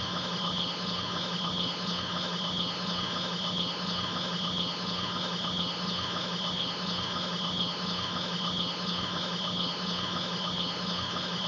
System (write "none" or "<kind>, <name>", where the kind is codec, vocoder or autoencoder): codec, HILCodec